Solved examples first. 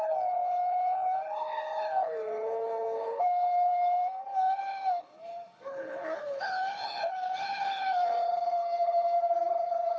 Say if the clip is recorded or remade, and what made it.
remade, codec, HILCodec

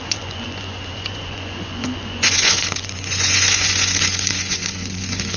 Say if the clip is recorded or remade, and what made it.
remade, vocoder, Vocos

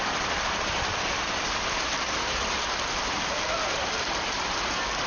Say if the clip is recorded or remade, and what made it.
recorded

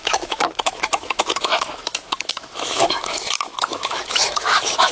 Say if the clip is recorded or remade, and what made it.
remade, autoencoder, DAC-VAE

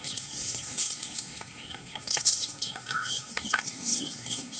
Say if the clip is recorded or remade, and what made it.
remade, codec, SNAC